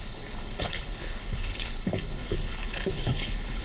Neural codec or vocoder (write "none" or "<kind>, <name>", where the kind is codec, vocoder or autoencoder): codec, HILCodec